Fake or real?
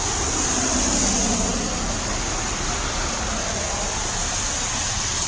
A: real